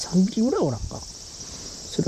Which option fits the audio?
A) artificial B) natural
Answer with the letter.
A